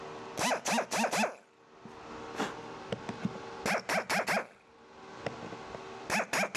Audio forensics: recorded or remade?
recorded